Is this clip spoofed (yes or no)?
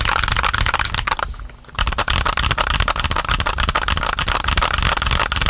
no